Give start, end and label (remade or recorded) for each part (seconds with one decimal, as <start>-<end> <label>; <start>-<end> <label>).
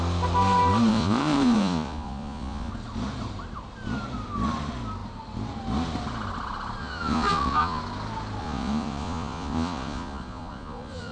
0.0-0.9 recorded; 0.9-2.7 remade; 2.7-6.8 recorded; 6.8-7.8 remade; 7.8-8.4 recorded; 8.4-11.1 remade